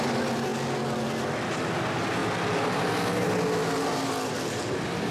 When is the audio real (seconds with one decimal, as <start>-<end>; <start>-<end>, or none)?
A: 0.0-5.1